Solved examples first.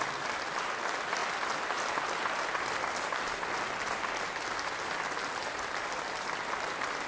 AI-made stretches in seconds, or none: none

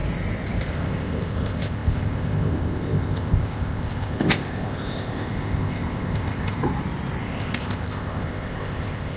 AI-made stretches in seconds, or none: 0.7-6.6 (codec, ZipCodec); 7.2-9.2

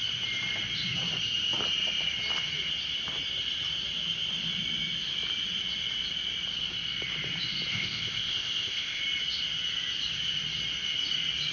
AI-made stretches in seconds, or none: 7.7-9.0 (codec, ZipCodec)

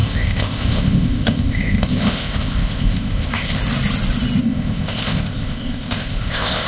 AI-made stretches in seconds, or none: 0.0-3.6 (codec, ZipCodec); 4.4-6.7

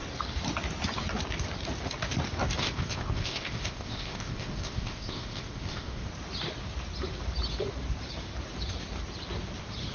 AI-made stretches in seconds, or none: 2.6-6.1 (codec, ZipCodec)

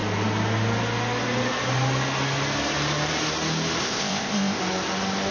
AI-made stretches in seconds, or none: 3.8-4.6 (codec, ZipCodec)

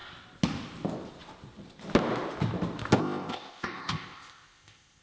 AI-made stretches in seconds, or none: 3.0-5.0 (codec, ZipCodec)